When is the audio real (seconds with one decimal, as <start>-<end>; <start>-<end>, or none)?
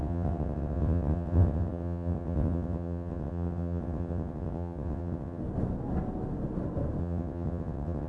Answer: 5.4-7.0